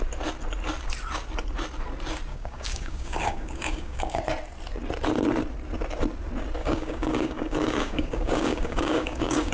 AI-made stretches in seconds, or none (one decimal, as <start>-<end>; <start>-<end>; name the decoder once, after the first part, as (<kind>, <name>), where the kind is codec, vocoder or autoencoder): 2.3-4.2 (codec, DAC); 6.6-9.5